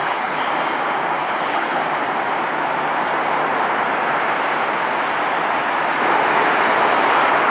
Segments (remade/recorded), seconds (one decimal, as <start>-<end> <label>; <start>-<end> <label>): 0.0-0.5 remade; 0.5-1.2 recorded; 1.2-1.8 remade; 1.8-7.5 recorded